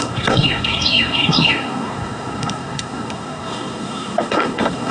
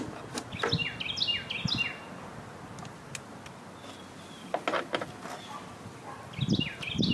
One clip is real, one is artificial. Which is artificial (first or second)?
first